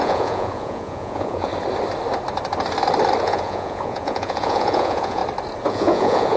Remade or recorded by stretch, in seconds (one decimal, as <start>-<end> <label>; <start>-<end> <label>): 0.0-1.5 remade; 1.5-3.2 recorded; 3.2-5.2 remade; 5.2-5.7 recorded; 5.7-6.4 remade